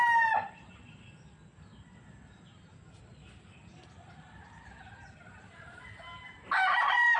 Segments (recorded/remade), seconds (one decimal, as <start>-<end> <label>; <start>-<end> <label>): 0.0-7.2 recorded